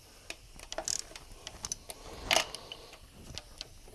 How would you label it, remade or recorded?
recorded